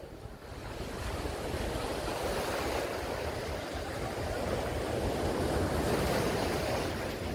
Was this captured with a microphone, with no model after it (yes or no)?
yes